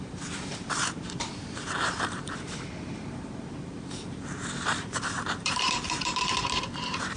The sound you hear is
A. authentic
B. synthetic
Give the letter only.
B